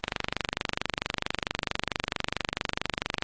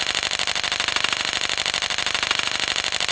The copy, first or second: second